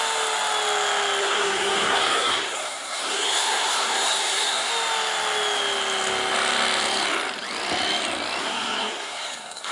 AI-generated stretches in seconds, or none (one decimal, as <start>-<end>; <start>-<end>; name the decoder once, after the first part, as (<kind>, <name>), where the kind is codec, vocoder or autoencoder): 1.2-4.7 (codec, SNAC); 8.4-9.7